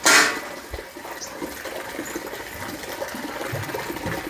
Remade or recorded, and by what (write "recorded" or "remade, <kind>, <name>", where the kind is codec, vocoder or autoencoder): recorded